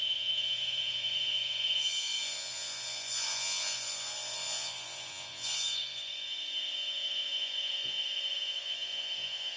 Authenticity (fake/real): fake